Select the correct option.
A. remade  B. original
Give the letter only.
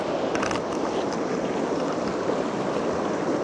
B